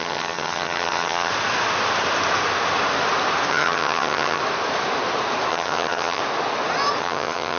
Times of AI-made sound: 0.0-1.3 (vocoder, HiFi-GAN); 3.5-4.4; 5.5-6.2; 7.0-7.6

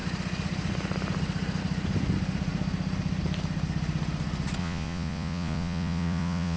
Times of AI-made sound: 4.6-6.6 (vocoder, Vocos)